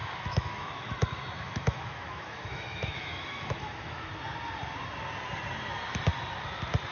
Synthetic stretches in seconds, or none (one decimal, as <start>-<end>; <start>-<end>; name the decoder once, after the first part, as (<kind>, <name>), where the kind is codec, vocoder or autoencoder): 0.0-4.1 (autoencoder, DAC-VAE)

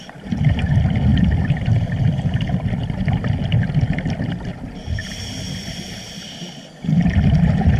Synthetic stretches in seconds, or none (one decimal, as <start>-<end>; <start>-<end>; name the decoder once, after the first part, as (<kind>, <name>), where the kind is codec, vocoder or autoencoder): none

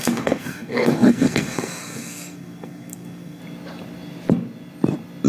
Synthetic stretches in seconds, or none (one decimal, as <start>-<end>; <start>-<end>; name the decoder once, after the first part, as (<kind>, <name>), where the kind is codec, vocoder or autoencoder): 0.0-3.4 (codec, SNAC)

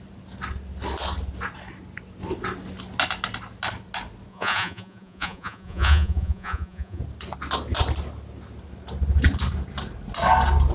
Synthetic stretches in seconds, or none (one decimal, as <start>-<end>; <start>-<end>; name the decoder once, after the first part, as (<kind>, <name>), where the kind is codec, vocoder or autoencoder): 4.3-7.0 (vocoder, Vocos)

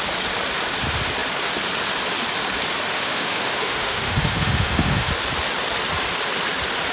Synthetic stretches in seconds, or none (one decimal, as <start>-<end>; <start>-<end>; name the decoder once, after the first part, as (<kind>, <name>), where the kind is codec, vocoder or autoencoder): 2.9-5.1 (autoencoder, DAC-VAE)

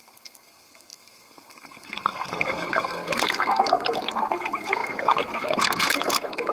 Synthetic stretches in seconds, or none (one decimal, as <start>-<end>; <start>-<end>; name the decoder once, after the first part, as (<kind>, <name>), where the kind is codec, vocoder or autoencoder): 0.0-6.5 (codec, SNAC)